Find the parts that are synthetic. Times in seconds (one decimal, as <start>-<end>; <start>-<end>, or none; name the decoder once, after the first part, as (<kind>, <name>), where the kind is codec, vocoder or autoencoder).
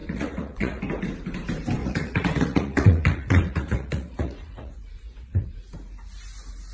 0.0-0.8 (vocoder, Vocos); 1.8-5.6